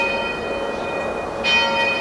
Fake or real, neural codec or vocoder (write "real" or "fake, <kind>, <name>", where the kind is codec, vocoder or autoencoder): real